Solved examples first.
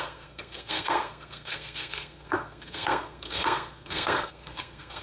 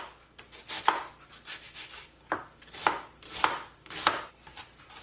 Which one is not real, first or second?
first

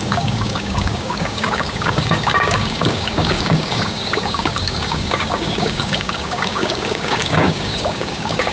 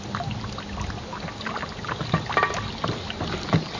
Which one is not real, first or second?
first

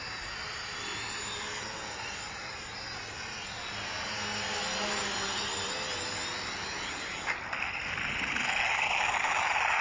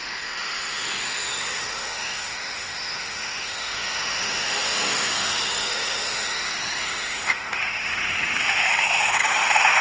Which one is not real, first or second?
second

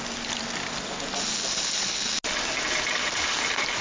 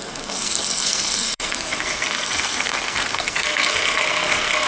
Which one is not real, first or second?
second